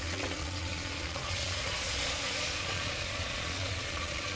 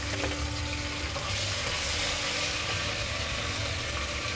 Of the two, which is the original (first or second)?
second